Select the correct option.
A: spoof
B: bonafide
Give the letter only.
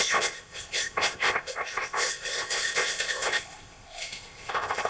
A